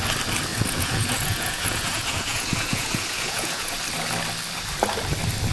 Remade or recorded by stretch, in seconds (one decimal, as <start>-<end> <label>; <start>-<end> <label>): 0.0-0.5 recorded; 0.5-3.8 remade; 3.8-5.5 recorded